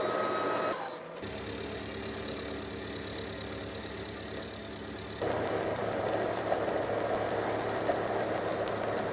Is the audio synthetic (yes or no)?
no